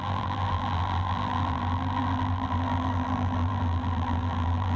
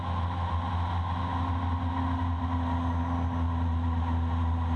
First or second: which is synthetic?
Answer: first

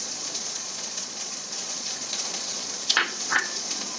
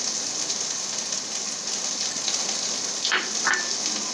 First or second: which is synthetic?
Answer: first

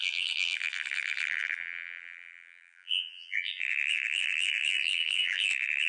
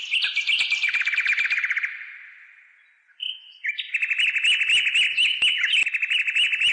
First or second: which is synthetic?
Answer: first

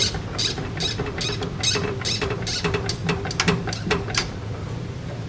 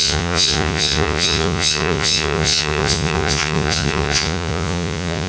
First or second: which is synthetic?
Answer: second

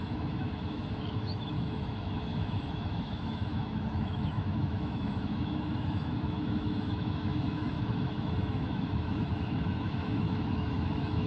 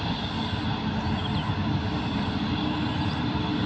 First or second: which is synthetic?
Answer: first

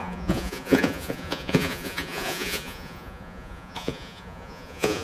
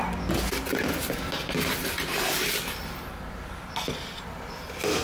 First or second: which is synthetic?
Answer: first